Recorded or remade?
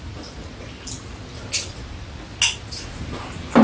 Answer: recorded